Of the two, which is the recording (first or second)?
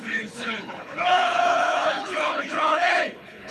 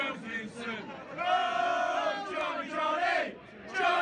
second